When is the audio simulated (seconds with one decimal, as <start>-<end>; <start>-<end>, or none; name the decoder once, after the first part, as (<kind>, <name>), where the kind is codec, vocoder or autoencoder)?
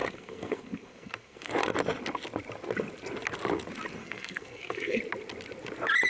0.0-1.5 (codec, SNAC); 4.0-5.0